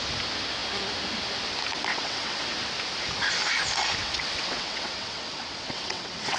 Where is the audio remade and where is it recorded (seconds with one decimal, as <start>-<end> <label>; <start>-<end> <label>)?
0.0-1.9 recorded; 1.9-2.4 remade; 2.4-4.0 recorded; 4.0-6.4 remade